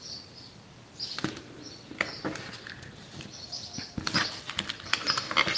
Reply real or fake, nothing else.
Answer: real